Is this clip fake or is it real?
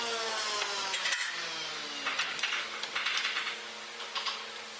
real